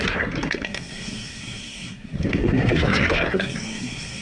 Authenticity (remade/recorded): remade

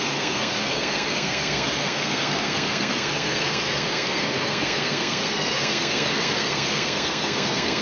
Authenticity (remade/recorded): remade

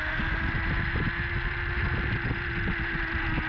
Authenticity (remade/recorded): recorded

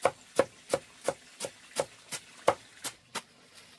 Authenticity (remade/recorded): recorded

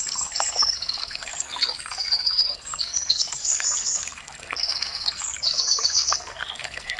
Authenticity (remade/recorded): remade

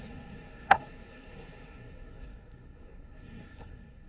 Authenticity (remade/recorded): remade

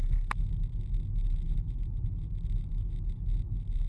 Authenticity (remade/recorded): recorded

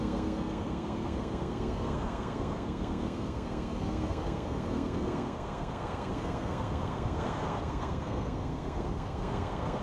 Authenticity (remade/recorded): remade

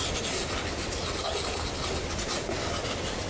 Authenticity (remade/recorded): recorded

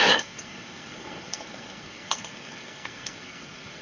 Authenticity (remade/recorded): remade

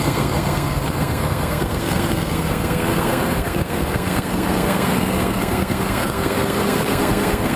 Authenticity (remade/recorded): remade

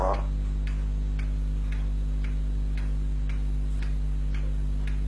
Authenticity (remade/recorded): recorded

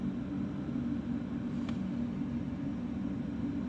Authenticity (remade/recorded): recorded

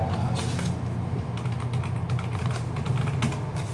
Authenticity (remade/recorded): recorded